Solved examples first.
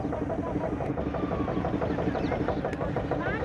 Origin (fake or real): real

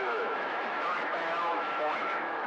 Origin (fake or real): fake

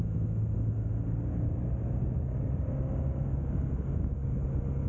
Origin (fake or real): real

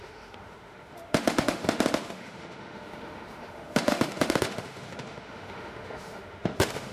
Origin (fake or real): fake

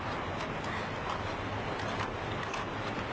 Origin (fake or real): real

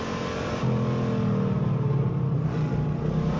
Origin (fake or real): real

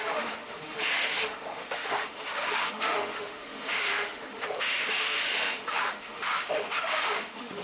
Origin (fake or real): fake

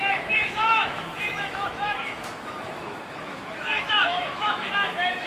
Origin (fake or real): fake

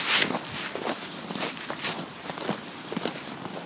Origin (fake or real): real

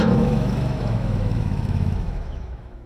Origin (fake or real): fake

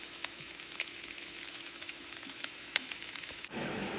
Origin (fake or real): fake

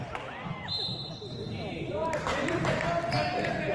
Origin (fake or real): real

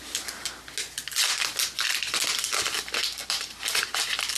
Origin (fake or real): real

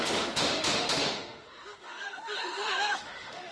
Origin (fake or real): fake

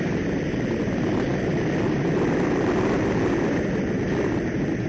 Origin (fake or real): real